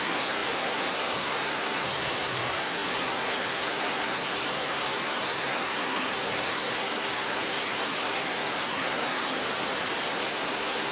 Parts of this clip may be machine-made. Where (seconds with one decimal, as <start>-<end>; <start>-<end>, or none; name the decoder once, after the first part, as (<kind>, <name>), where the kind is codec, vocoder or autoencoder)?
0.0-9.4 (codec, SNAC); 10.0-10.9